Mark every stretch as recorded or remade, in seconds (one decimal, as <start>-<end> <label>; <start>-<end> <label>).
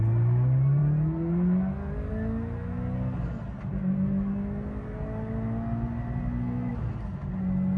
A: 0.0-7.8 recorded